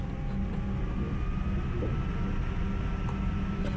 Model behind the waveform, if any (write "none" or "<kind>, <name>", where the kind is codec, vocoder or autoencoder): none